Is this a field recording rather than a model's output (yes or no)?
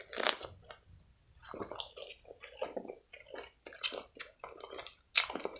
yes